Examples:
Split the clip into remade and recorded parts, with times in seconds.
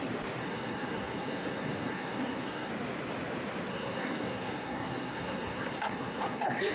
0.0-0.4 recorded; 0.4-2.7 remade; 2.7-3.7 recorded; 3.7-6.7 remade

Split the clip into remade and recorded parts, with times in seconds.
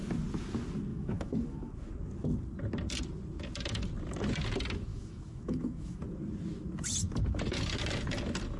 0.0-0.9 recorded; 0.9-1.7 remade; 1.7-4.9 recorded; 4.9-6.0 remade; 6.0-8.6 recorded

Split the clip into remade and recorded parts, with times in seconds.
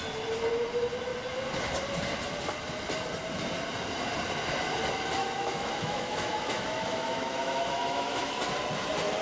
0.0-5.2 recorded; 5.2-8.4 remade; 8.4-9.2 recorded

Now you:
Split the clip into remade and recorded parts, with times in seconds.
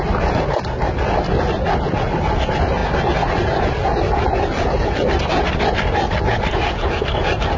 0.0-7.6 recorded